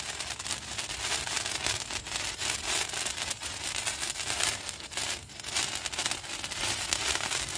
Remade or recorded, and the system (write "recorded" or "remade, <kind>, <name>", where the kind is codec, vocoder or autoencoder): recorded